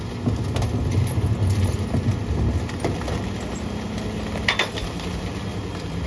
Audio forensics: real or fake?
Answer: real